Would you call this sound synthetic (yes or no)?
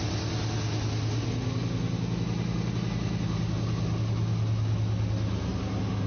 no